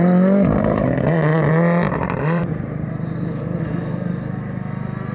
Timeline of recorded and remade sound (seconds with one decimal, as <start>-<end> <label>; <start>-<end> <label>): 0.0-1.3 recorded; 1.3-4.4 remade; 4.4-5.1 recorded